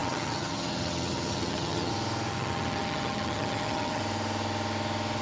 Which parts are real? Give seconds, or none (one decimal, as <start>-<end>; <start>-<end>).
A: 1.9-2.3; 4.0-5.2